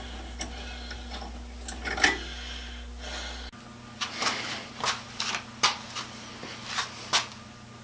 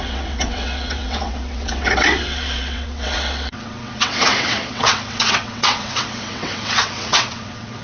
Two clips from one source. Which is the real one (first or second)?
first